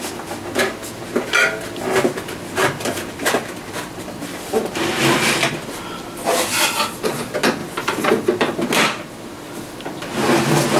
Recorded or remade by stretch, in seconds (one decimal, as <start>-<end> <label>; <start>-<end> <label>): 0.0-2.6 recorded; 2.6-5.8 remade; 5.8-7.6 recorded; 7.6-8.1 remade; 8.1-10.8 recorded